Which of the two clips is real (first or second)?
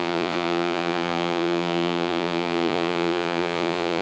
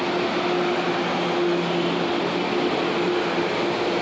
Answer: second